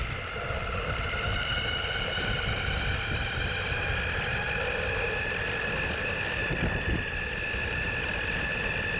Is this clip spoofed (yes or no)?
no